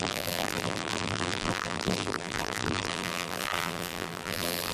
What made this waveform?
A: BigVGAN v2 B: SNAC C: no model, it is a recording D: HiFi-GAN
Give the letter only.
A